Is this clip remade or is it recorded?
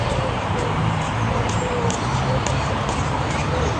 remade